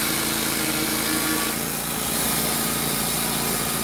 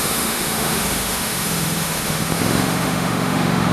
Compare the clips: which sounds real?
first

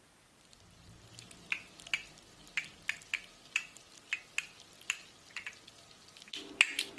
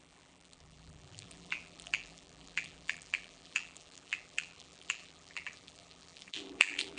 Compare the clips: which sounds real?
first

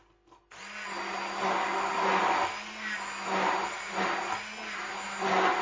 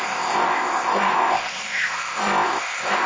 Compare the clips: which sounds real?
first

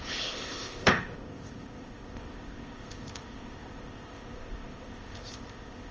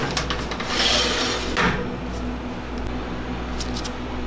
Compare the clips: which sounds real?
second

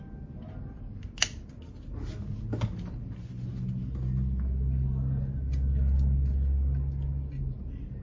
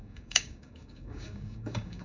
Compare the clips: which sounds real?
first